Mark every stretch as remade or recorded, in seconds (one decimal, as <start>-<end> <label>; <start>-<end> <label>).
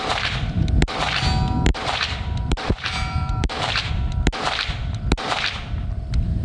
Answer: 0.0-1.7 recorded; 1.7-3.9 remade; 3.9-6.4 recorded